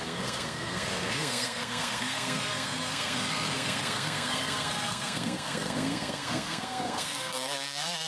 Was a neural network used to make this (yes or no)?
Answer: yes